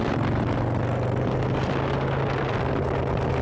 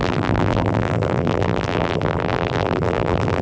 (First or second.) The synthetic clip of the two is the second